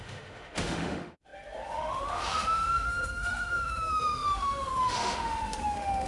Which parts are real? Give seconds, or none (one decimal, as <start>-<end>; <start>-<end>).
none